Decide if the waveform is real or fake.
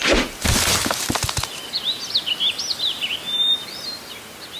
real